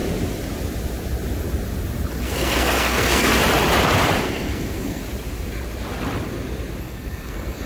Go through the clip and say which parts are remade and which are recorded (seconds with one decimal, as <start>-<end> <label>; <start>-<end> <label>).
0.0-2.2 recorded; 2.2-3.3 remade; 3.3-4.2 recorded; 4.2-5.0 remade; 5.0-6.8 recorded; 6.8-7.7 remade